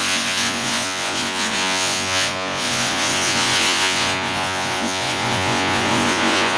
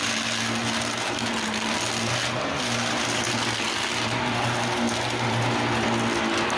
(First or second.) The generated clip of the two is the first